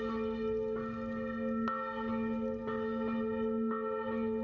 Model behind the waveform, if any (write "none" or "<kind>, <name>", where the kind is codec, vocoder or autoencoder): none